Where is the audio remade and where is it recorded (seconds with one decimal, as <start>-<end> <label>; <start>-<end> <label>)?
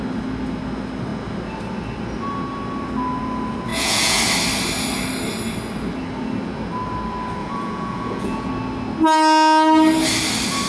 0.0-3.7 recorded; 3.7-4.2 remade; 4.2-7.4 recorded; 7.4-8.5 remade; 8.5-10.7 recorded